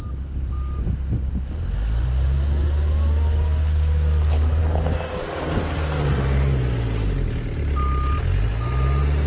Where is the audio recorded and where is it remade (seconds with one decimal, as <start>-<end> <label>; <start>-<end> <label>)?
0.0-9.3 recorded